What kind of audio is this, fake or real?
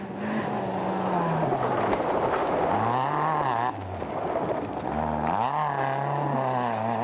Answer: real